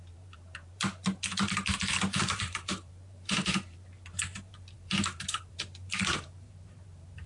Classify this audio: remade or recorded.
remade